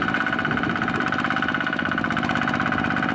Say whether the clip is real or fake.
real